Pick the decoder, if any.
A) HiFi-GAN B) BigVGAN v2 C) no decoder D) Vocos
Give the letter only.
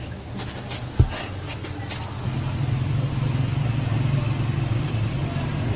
C